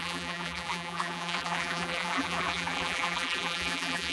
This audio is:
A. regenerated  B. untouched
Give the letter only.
A